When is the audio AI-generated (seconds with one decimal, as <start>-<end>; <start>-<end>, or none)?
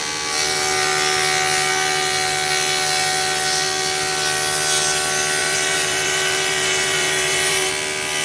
5.4-7.7